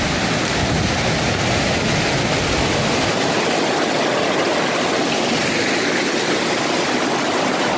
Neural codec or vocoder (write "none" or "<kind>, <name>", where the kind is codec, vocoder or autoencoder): none